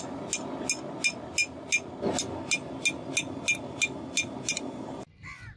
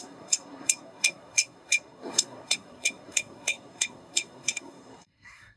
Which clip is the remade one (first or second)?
second